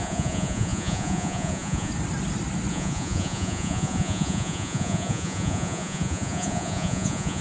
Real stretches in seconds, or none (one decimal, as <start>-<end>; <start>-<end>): 1.9-2.7